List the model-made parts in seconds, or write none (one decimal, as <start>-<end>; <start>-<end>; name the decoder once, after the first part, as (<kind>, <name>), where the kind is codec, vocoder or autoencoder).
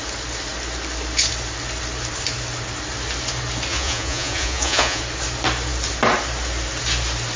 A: 3.7-5.0 (vocoder, Vocos)